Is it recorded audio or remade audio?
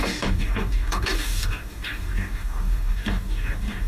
remade